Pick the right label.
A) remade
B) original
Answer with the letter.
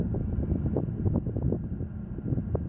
B